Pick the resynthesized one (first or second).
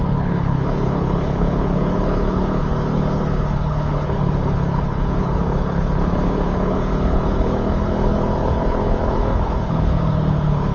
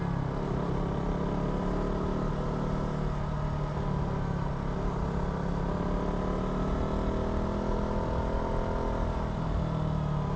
first